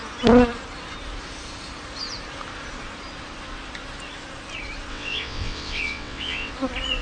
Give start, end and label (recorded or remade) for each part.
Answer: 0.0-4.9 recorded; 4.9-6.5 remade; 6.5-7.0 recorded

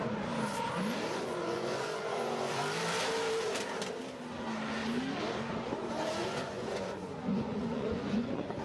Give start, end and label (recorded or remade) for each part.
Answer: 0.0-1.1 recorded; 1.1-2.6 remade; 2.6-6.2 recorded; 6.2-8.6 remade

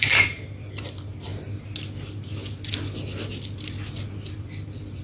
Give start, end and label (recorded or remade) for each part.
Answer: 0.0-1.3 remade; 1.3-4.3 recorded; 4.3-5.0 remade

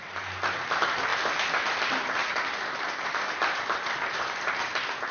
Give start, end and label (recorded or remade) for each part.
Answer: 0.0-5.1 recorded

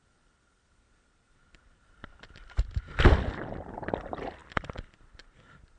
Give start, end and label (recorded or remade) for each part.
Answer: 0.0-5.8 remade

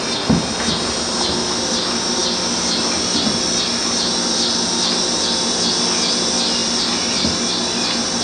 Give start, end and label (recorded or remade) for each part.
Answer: 0.0-8.2 recorded